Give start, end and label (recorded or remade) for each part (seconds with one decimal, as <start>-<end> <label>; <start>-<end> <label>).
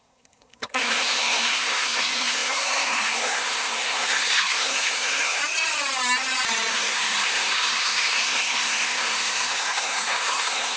0.0-5.4 remade; 5.4-6.7 recorded; 6.7-10.8 remade